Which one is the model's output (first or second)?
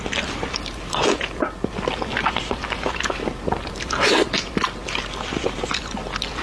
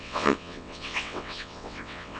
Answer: second